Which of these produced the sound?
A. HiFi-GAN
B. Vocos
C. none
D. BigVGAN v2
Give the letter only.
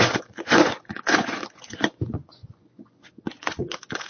B